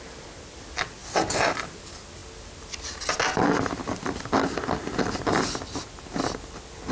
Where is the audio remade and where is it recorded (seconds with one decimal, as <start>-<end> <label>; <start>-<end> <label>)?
0.0-6.9 recorded